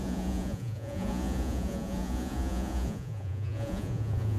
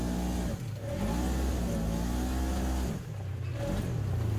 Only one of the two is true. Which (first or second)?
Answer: second